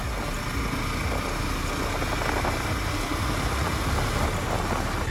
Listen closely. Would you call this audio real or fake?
real